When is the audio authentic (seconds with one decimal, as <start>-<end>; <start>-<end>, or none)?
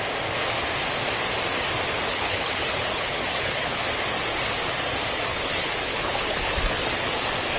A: 0.0-2.1; 3.8-5.3; 7.1-7.6